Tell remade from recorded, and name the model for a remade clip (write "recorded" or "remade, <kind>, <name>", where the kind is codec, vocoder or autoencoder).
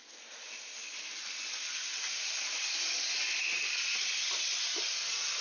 recorded